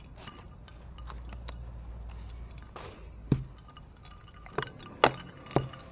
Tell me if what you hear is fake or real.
real